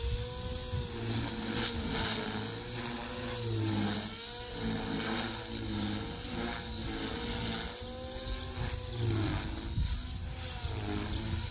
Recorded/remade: recorded